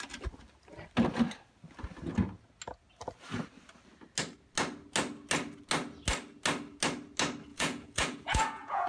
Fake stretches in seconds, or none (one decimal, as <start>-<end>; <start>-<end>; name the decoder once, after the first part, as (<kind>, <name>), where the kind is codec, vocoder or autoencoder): 7.5-8.9 (vocoder, Vocos)